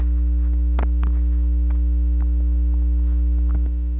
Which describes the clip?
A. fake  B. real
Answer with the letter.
B